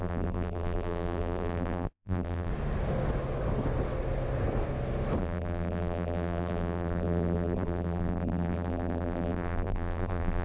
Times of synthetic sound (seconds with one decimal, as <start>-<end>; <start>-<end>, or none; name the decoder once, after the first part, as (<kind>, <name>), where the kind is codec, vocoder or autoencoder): 0.0-2.5 (vocoder, BigVGAN v2); 5.2-10.4